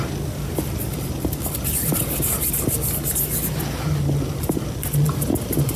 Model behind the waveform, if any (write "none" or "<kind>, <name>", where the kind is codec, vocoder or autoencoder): none